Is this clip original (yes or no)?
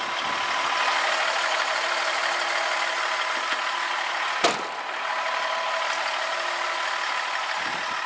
yes